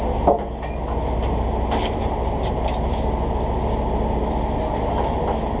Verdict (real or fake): real